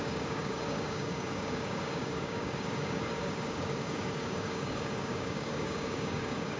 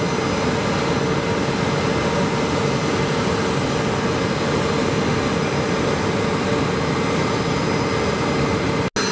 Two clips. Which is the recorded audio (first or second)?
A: second